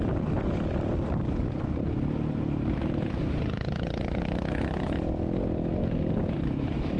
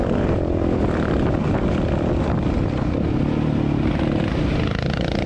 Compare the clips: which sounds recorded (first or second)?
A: second